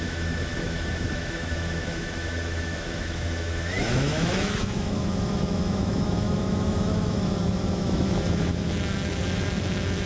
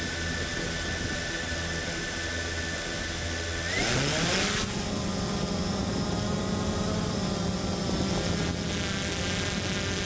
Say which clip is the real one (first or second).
second